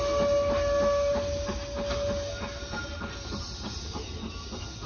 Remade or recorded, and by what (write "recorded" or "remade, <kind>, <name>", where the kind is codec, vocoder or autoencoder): recorded